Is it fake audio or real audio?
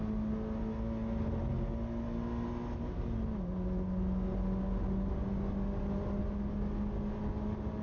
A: real